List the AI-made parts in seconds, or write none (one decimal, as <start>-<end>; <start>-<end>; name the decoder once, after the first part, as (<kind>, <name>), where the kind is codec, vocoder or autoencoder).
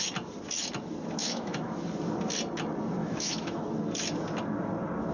1.2-1.8 (autoencoder, DAC-VAE); 3.0-3.6